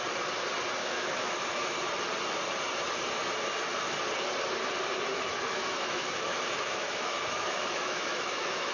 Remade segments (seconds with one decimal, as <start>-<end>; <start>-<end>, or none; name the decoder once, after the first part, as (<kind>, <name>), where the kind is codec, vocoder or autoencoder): 0.8-1.3 (autoencoder, DAC-VAE); 5.1-8.7